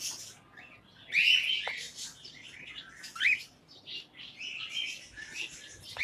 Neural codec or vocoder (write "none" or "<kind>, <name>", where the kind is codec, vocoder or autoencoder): none